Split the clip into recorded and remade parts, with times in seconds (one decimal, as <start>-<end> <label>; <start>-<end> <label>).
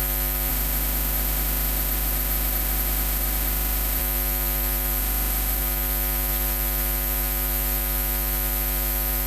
0.0-0.5 recorded; 0.5-4.0 remade; 4.0-5.0 recorded; 5.0-5.6 remade; 5.6-9.3 recorded